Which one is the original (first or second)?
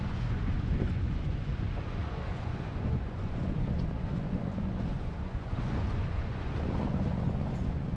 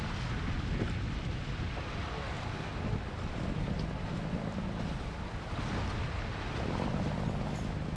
second